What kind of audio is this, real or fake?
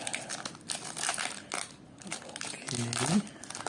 real